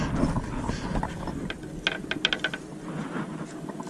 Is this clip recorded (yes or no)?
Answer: yes